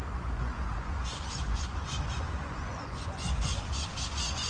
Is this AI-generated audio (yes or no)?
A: yes